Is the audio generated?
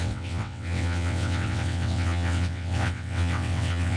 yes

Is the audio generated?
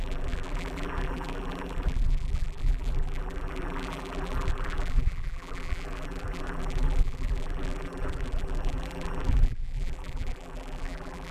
yes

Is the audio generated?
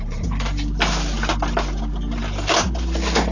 no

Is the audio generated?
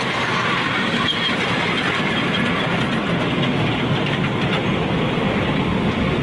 no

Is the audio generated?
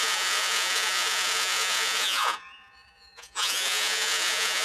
yes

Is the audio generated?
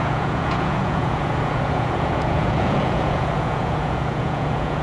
yes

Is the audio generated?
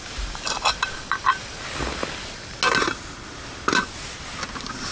no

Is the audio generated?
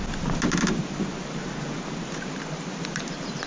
no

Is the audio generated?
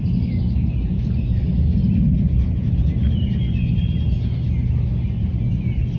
no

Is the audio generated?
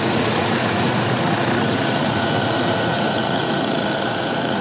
yes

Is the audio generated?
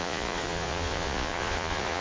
yes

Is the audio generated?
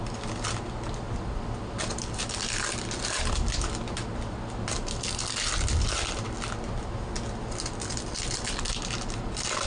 no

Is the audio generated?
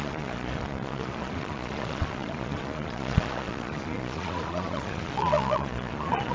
yes